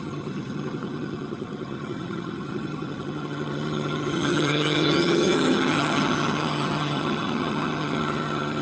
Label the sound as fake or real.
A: fake